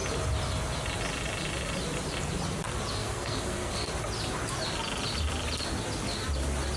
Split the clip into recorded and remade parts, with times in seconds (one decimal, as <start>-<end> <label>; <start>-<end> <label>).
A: 0.0-3.0 recorded; 3.0-3.9 remade; 3.9-6.8 recorded